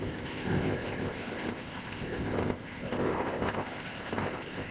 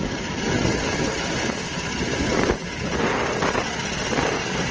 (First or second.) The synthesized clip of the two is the first